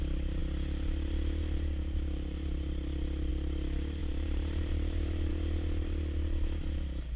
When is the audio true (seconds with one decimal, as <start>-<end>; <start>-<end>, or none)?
0.0-4.0; 5.3-7.2